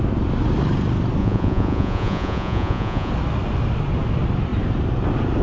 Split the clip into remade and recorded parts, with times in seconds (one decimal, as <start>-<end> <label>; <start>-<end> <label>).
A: 0.0-1.2 recorded; 1.2-3.1 remade; 3.1-5.4 recorded

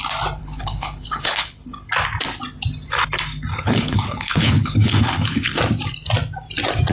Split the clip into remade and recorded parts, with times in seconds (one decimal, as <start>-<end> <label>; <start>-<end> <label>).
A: 0.0-0.4 recorded; 0.4-1.9 remade; 1.9-3.5 recorded; 3.5-5.6 remade; 5.6-6.9 recorded